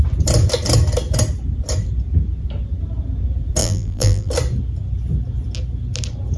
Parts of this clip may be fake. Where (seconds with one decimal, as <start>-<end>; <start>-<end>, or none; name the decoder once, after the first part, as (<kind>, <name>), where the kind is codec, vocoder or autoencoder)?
3.6-4.3 (vocoder, BigVGAN v2)